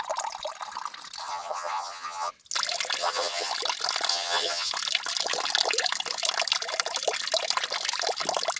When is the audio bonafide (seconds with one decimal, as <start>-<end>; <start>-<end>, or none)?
0.0-1.2; 2.3-3.0; 3.5-4.1; 4.7-8.6